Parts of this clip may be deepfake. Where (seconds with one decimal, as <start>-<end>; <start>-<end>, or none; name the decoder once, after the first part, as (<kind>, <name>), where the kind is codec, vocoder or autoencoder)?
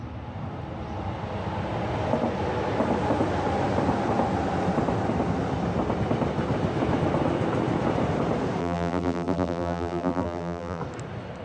8.6-10.8 (vocoder, BigVGAN v2)